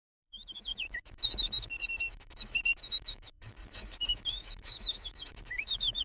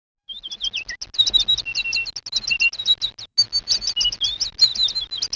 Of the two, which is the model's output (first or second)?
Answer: first